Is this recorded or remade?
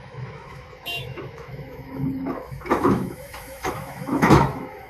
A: remade